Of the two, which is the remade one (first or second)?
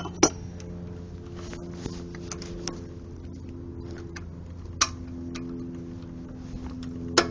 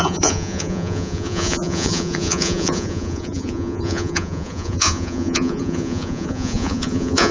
second